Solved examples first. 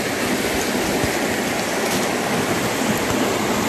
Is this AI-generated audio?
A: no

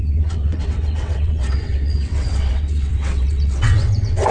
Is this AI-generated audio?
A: yes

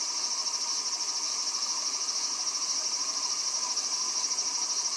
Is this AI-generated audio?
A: no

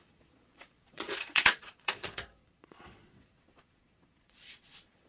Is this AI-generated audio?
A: yes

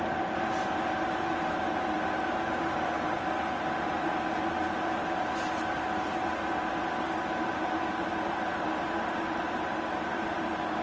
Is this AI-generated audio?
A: no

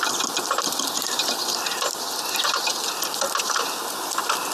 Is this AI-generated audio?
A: no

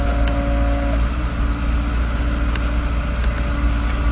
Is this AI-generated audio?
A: no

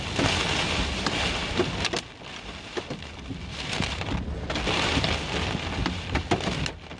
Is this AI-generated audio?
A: no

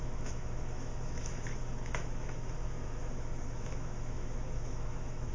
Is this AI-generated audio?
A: yes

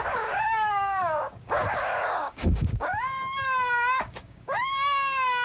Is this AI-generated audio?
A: yes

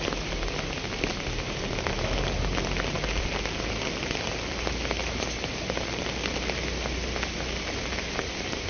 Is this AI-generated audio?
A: no